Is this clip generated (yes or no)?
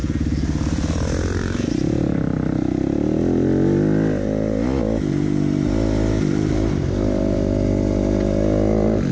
no